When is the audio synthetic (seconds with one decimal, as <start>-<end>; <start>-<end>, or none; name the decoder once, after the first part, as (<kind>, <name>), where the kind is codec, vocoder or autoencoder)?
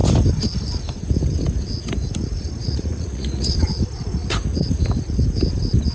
2.6-3.5 (vocoder, Vocos)